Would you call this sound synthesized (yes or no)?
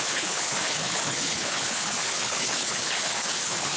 yes